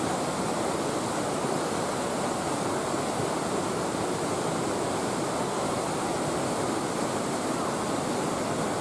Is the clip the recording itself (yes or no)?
yes